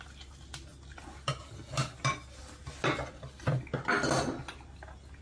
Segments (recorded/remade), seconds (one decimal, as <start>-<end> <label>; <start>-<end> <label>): 0.0-5.2 recorded